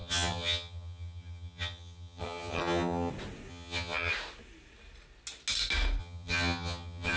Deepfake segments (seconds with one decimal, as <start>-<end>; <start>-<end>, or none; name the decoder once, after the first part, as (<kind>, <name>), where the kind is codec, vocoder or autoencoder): 0.0-3.1 (vocoder, HiFi-GAN); 3.5-4.1; 6.0-7.2